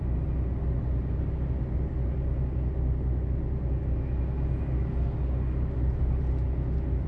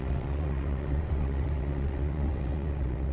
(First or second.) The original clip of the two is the first